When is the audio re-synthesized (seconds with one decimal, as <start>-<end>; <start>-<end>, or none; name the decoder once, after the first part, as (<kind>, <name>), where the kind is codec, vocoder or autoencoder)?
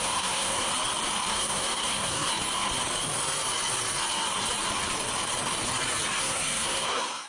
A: 0.0-0.7 (codec, SNAC); 1.3-2.3; 6.2-7.3